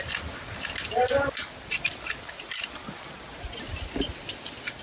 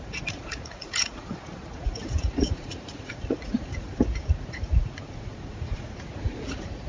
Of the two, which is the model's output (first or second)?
second